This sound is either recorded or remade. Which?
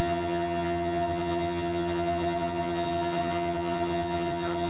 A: remade